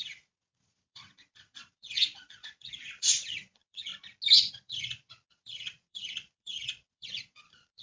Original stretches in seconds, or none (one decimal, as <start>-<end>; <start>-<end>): 3.9-4.5